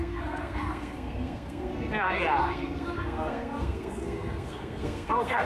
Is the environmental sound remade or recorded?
remade